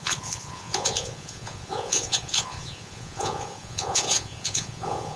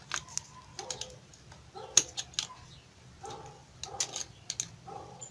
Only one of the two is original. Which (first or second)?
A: second